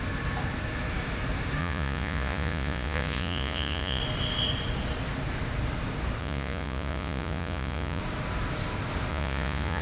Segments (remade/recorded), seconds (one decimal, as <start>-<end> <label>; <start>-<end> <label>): 0.0-1.6 recorded; 1.6-4.0 remade; 4.0-6.2 recorded; 6.2-8.0 remade; 8.0-9.1 recorded; 9.1-9.8 remade